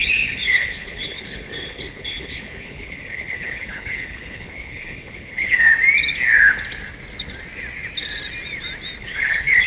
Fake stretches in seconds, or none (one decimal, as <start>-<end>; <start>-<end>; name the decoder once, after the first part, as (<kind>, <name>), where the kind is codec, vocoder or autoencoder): 0.0-5.7 (codec, HILCodec); 9.0-9.7